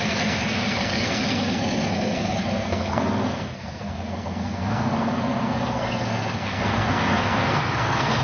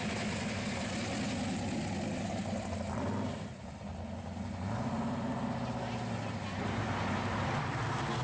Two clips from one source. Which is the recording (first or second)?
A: second